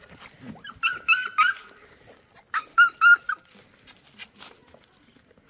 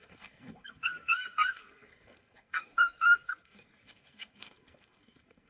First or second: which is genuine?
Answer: first